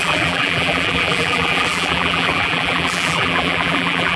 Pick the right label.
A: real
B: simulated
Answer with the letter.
B